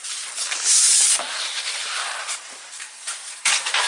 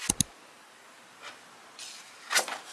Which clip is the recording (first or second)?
second